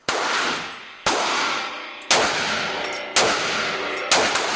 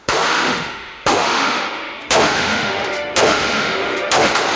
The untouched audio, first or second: first